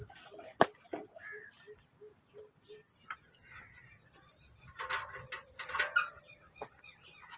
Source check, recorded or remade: recorded